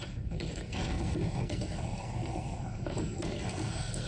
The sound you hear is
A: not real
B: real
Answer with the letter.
A